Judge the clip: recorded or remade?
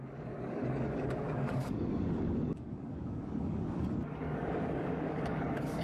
remade